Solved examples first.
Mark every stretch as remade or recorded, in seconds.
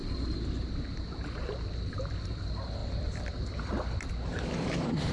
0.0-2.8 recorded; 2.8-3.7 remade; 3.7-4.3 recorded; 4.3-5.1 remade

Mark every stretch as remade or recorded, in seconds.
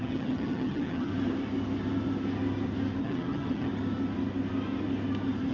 0.0-1.1 remade; 1.1-3.0 recorded; 3.0-3.7 remade; 3.7-5.5 recorded